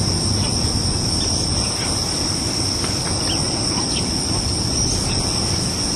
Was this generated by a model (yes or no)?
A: no